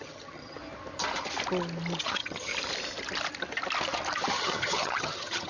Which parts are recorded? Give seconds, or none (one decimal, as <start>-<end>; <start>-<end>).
0.6-2.0; 2.5-4.3